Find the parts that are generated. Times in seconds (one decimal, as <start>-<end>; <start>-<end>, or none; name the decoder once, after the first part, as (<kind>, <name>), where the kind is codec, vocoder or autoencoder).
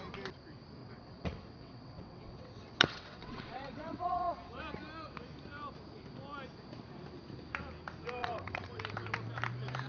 0.8-4.6 (vocoder, WaveNeXt); 8.2-8.8